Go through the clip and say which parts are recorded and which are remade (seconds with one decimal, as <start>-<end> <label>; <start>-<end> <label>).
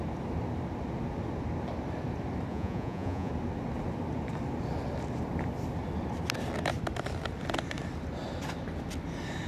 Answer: 0.0-2.5 recorded; 2.5-3.3 remade; 3.3-9.5 recorded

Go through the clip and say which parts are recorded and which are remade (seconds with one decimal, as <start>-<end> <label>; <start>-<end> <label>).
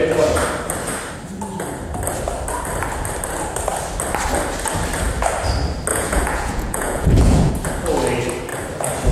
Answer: 0.0-5.9 recorded; 5.9-7.5 remade; 7.5-9.1 recorded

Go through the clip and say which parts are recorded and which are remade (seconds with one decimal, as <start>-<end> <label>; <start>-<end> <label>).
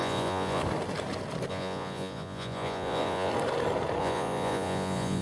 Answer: 0.0-0.6 remade; 0.6-1.5 recorded; 1.5-3.3 remade; 3.3-4.0 recorded; 4.0-5.2 remade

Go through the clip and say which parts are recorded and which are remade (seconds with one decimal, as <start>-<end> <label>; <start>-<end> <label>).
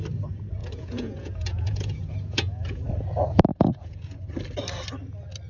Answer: 0.0-0.6 recorded; 0.6-2.8 remade; 2.8-3.5 recorded; 3.5-4.2 remade; 4.2-5.5 recorded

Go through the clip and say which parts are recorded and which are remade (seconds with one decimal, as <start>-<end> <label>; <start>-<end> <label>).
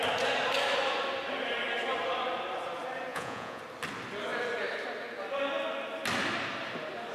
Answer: 0.0-3.1 recorded; 3.1-3.6 remade; 3.6-7.1 recorded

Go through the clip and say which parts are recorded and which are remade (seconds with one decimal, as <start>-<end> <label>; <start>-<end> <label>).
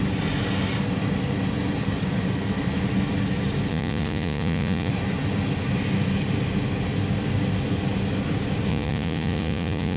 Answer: 0.0-3.7 recorded; 3.7-4.9 remade; 4.9-8.7 recorded; 8.7-10.0 remade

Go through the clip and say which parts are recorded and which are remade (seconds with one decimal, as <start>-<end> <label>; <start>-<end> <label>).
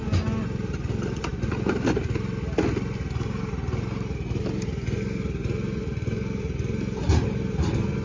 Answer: 0.0-8.0 recorded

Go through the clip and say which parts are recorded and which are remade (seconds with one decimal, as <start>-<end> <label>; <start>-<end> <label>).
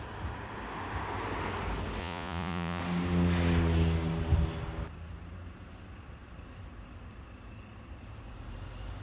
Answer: 0.0-2.0 recorded; 2.0-2.8 remade; 2.8-9.0 recorded